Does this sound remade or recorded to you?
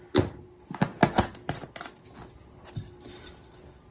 recorded